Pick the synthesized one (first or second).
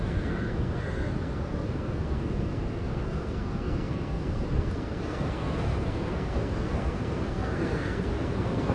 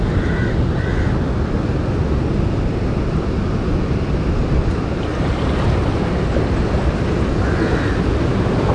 first